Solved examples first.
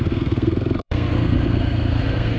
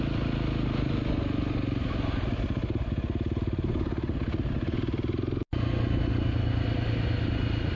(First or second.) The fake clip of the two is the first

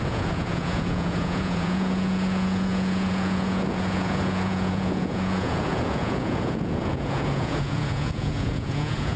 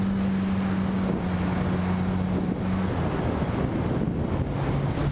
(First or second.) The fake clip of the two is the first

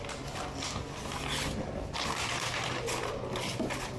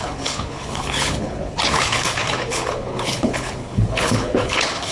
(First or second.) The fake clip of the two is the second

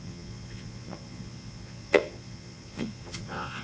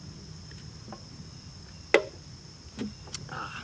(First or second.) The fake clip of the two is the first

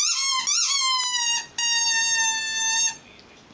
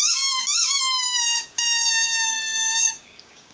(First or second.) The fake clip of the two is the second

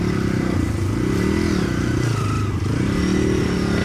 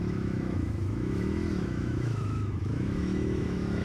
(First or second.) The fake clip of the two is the second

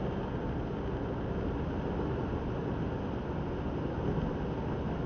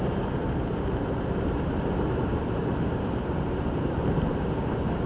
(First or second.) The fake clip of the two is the second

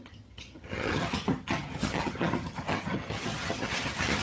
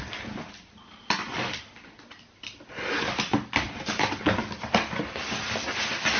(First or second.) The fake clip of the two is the first